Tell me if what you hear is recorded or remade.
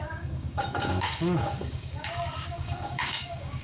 remade